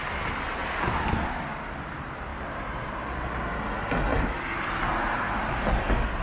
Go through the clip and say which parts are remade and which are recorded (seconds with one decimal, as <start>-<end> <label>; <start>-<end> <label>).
0.0-6.2 recorded

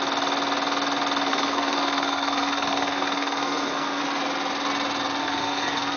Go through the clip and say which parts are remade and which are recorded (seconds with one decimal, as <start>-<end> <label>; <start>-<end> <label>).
0.0-1.3 recorded; 1.3-4.0 remade; 4.0-5.2 recorded; 5.2-6.0 remade

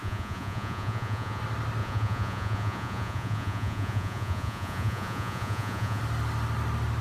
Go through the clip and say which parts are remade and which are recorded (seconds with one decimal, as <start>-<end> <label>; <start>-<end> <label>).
0.0-1.4 remade; 1.4-1.8 recorded; 1.8-6.0 remade; 6.0-7.0 recorded